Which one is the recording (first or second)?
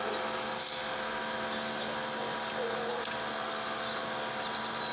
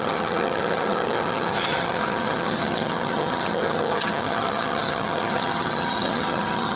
first